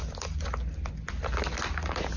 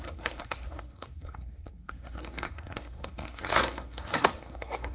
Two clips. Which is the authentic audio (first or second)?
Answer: first